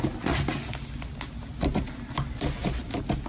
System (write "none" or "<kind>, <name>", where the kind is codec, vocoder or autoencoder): none